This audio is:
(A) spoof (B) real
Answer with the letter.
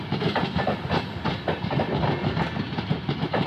B